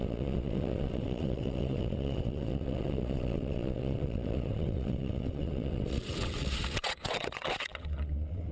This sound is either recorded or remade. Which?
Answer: remade